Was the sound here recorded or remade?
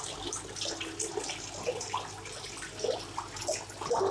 remade